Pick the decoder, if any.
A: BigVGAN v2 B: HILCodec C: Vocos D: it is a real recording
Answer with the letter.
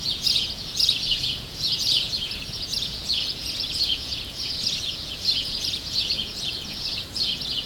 C